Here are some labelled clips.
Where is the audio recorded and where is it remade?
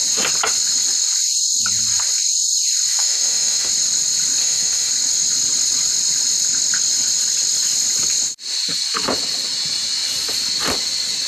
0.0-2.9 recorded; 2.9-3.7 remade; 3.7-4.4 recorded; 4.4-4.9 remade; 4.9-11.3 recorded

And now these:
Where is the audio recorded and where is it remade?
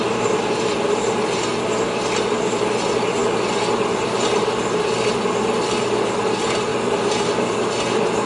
0.0-8.3 recorded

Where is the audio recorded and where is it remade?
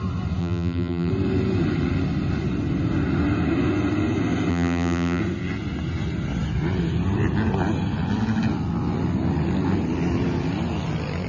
0.0-0.4 recorded; 0.4-1.1 remade; 1.1-4.5 recorded; 4.5-5.2 remade; 5.2-11.3 recorded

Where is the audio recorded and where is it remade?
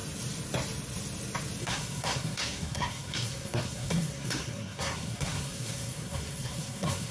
0.0-1.6 recorded; 1.6-7.1 remade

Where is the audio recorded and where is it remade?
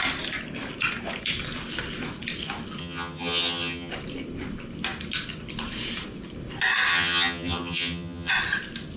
0.0-2.8 recorded; 2.8-3.9 remade; 3.9-6.9 recorded; 6.9-8.3 remade; 8.3-9.0 recorded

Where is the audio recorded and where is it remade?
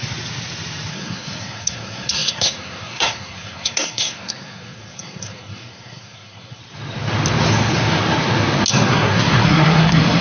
0.0-0.9 recorded; 0.9-6.6 remade; 6.6-8.7 recorded; 8.7-10.2 remade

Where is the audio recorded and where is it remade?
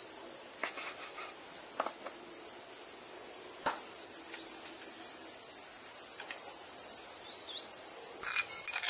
0.0-8.9 recorded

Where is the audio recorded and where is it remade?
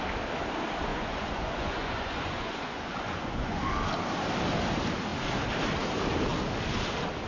0.0-0.9 recorded; 0.9-3.6 remade; 3.6-7.3 recorded